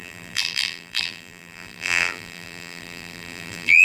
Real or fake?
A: fake